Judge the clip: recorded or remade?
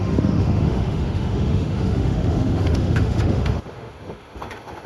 remade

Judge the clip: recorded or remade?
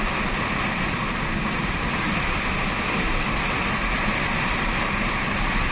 recorded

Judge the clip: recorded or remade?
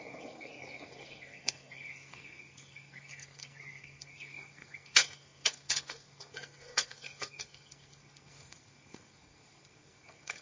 remade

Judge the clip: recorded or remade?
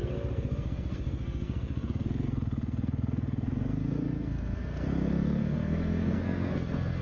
remade